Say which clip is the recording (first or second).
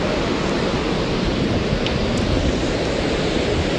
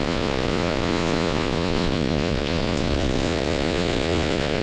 first